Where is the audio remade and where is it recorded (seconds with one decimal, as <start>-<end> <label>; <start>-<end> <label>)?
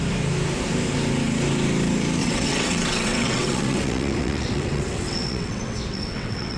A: 0.0-2.2 recorded; 2.2-6.6 remade